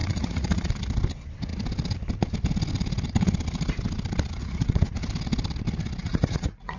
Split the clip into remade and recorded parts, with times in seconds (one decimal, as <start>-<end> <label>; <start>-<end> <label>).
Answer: 0.0-0.7 remade; 0.7-4.4 recorded; 4.4-4.9 remade; 4.9-6.0 recorded; 6.0-6.8 remade